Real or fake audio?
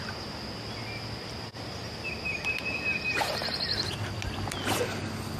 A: real